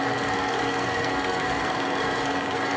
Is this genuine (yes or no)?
no